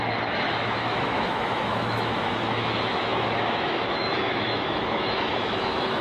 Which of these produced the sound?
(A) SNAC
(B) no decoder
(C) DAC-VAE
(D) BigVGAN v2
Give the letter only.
C